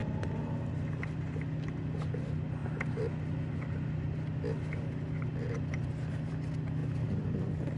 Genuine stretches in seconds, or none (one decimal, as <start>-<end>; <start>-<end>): 0.0-7.8